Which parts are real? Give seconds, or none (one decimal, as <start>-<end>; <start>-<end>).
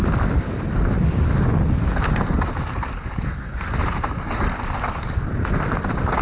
0.0-6.2